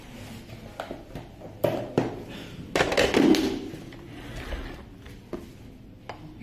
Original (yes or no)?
yes